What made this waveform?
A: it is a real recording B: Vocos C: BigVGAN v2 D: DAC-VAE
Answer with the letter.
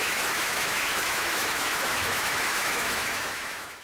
D